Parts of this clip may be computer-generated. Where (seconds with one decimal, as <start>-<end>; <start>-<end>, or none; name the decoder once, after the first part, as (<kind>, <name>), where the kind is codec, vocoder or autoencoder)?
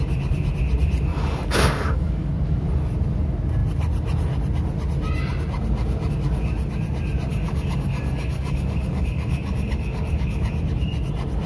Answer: 1.1-2.3 (codec, DAC); 7.3-10.5